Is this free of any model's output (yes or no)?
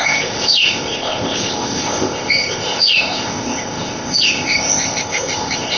no